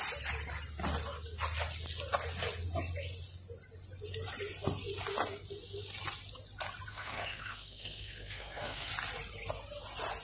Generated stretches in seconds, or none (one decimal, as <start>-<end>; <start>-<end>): 6.9-8.9